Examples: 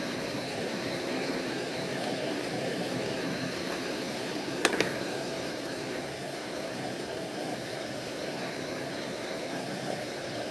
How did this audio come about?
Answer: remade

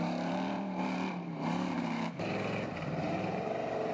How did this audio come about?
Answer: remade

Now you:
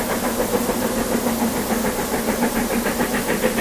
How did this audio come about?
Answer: recorded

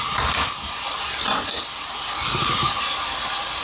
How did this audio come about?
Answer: recorded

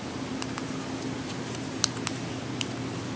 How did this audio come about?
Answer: recorded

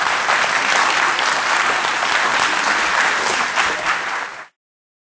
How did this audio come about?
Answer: recorded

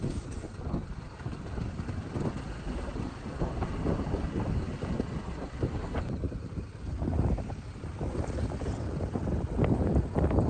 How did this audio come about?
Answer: recorded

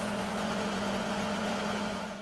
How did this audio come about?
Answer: remade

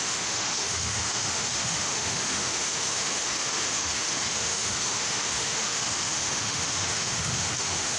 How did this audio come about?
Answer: remade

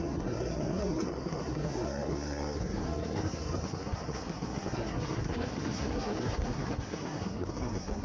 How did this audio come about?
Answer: remade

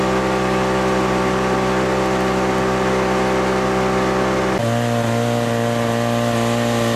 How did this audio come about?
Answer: recorded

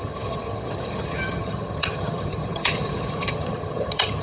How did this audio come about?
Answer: remade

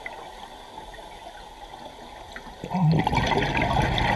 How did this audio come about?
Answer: recorded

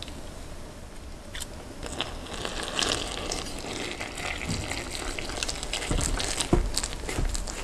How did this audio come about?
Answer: recorded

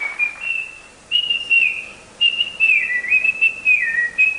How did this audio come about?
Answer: recorded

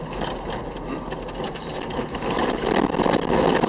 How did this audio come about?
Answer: recorded